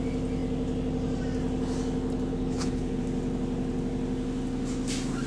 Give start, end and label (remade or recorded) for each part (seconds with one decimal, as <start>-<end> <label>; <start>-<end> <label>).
0.0-2.3 recorded; 2.3-3.0 remade; 3.0-5.3 recorded

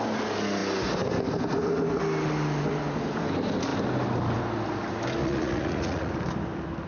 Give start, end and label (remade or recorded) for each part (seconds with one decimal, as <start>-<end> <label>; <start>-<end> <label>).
0.0-5.2 recorded; 5.2-6.1 remade; 6.1-6.9 recorded